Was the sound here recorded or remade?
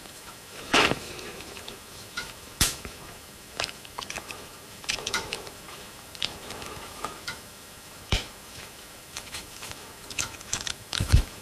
remade